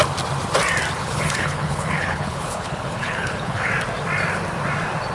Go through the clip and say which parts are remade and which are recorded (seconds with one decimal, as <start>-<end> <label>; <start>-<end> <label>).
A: 0.0-1.0 recorded; 1.0-3.7 remade; 3.7-5.1 recorded